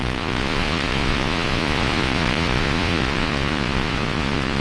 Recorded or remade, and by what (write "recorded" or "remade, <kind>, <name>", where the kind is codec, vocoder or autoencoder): remade, vocoder, Vocos